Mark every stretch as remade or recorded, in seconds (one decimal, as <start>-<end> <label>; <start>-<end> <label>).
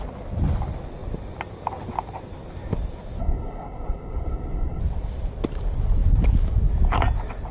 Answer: 0.0-3.2 recorded; 3.2-4.8 remade; 4.8-7.5 recorded